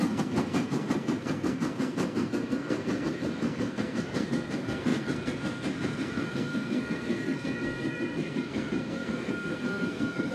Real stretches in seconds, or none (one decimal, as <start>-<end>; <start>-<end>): none